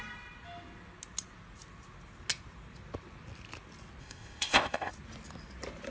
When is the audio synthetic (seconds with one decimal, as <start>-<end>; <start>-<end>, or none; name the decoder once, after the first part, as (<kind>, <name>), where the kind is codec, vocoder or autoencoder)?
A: 4.0-4.9 (codec, ZipCodec)